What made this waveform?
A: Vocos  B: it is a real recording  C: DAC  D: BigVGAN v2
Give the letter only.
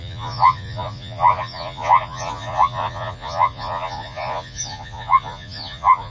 A